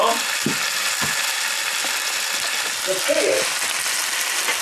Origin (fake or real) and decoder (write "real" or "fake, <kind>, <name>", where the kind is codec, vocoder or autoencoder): real